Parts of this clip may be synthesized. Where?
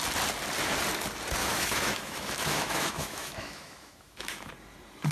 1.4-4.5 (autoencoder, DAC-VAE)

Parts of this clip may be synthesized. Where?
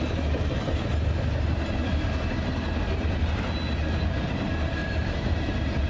4.8-5.9 (vocoder, BigVGAN v2)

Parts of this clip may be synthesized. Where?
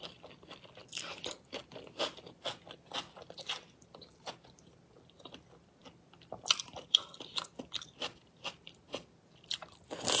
none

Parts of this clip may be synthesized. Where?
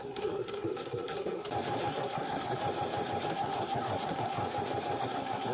0.0-1.4 (codec, SNAC); 1.9-2.6; 3.3-4.4; 5.0-5.5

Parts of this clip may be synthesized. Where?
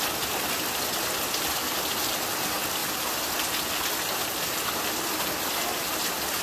none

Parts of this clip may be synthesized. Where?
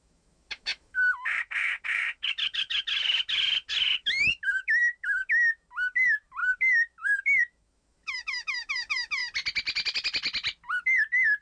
0.0-9.2 (autoencoder, DAC-VAE)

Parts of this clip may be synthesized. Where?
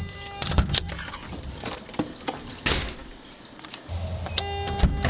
none